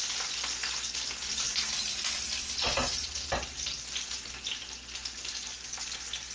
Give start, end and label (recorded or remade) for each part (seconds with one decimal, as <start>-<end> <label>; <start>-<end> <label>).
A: 0.0-6.3 recorded

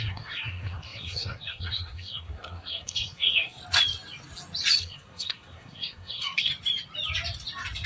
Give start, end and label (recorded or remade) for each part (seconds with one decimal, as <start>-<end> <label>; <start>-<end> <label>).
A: 0.0-3.6 remade; 3.6-4.8 recorded; 4.8-6.5 remade; 6.5-7.9 recorded

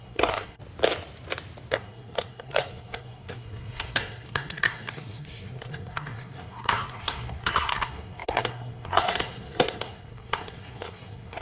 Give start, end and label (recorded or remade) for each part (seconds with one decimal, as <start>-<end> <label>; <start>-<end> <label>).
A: 0.0-0.6 remade; 0.6-1.7 recorded; 1.7-11.4 remade

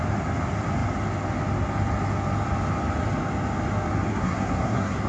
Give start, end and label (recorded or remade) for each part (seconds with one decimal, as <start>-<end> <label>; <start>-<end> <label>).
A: 0.0-4.1 recorded; 4.1-5.1 remade